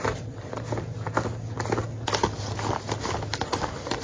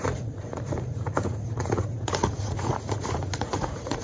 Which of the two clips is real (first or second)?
first